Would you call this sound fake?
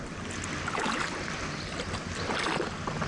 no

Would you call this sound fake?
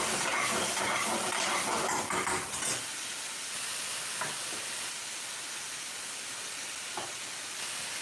no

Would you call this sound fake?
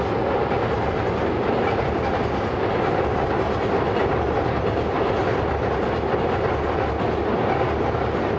no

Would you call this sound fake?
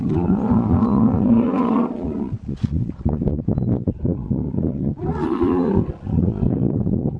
yes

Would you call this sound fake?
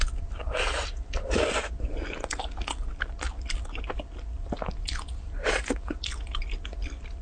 no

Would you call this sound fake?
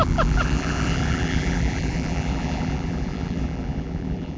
yes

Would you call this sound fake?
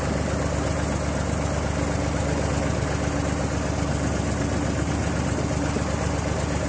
no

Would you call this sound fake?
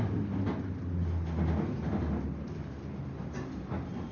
no